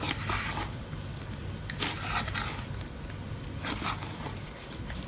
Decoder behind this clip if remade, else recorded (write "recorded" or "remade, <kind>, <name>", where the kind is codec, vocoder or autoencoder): recorded